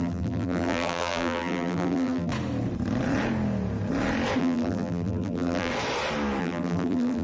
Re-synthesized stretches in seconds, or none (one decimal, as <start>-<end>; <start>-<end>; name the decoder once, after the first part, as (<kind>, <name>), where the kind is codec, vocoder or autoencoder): 0.0-2.3 (vocoder, BigVGAN v2); 4.4-5.7; 6.4-7.2